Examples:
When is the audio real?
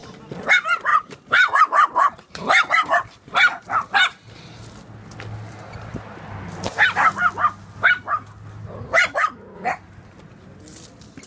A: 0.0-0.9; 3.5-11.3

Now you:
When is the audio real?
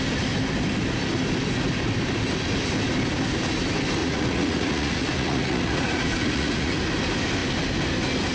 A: 0.0-4.0; 6.7-8.3